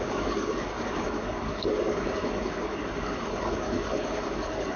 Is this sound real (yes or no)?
no